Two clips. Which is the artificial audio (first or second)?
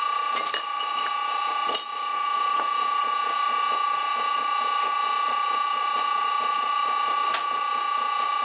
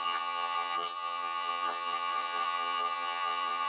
second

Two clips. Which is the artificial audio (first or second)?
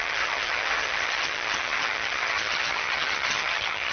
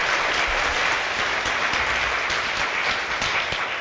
first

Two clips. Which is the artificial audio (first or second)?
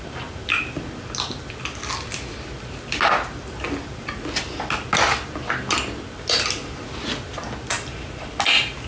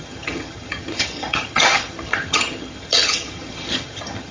second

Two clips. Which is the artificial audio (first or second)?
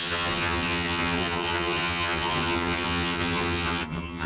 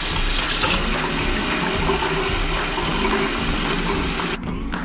first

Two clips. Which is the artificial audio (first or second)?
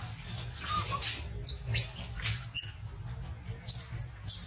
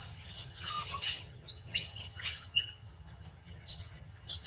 second